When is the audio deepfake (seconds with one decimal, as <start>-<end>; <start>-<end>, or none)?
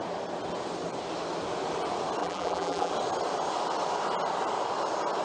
2.2-2.9